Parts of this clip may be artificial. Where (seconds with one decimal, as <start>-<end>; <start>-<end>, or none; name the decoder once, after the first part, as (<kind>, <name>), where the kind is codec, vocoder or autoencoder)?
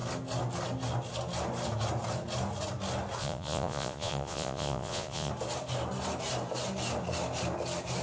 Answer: 3.2-5.3 (vocoder, Vocos)